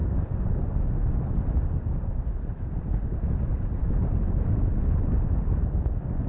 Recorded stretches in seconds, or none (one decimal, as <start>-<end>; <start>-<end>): 0.0-6.3

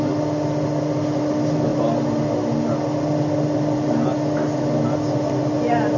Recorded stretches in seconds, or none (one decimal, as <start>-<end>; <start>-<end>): 0.0-6.0